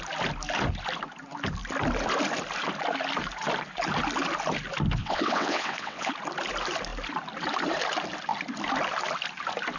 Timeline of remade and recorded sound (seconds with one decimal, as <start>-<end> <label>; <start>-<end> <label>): 0.0-5.0 recorded; 5.0-6.1 remade; 6.1-9.8 recorded